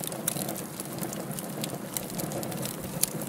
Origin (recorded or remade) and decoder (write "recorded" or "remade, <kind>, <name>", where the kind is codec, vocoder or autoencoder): recorded